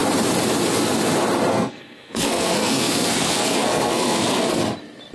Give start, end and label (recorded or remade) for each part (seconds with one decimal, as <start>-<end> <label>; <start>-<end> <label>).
0.0-1.5 recorded; 1.5-4.6 remade; 4.6-5.1 recorded